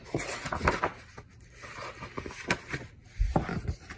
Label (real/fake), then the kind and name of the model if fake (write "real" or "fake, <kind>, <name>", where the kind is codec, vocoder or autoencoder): real